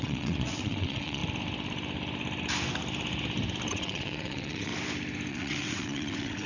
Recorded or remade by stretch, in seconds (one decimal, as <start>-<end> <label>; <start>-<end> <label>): 0.0-1.2 remade; 1.2-3.7 recorded; 3.7-4.7 remade; 4.7-5.3 recorded; 5.3-6.5 remade